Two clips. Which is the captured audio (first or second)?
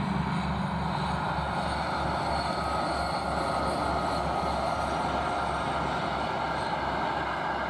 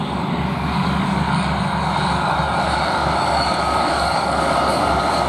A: first